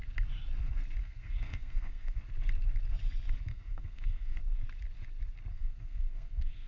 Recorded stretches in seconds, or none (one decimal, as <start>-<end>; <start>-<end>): 0.0-1.0; 2.2-3.5; 4.4-5.5